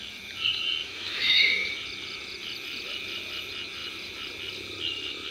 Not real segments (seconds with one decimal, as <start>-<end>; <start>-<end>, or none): 0.8-1.5